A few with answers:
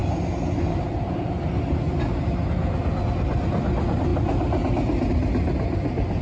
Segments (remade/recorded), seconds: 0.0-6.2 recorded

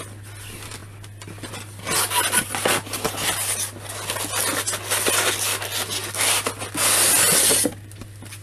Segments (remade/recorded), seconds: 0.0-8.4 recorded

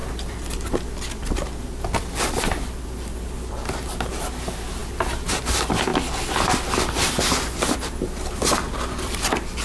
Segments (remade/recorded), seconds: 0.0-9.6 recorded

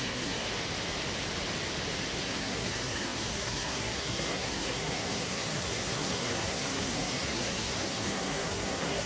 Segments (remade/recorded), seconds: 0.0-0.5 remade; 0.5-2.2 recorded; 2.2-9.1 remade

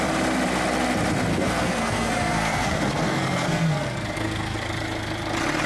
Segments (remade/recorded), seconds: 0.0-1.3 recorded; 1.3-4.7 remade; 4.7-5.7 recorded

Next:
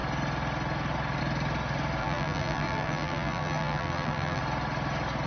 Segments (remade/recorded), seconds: 0.0-2.0 recorded; 2.0-4.4 remade; 4.4-5.3 recorded